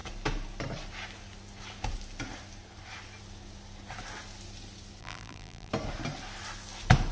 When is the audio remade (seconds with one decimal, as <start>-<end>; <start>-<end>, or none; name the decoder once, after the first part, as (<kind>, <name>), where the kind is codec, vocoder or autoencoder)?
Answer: 5.0-5.7 (vocoder, BigVGAN v2)